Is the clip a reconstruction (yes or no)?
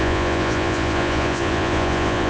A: yes